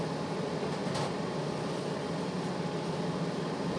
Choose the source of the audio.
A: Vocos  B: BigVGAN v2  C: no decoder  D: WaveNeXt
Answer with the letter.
C